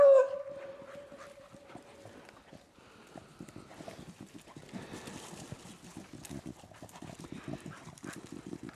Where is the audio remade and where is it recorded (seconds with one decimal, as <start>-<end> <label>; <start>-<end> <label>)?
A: 0.0-8.8 recorded